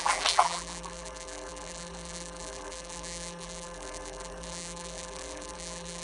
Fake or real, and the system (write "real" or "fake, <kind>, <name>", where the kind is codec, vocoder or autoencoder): fake, vocoder, BigVGAN v2